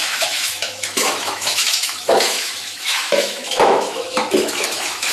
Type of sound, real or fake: fake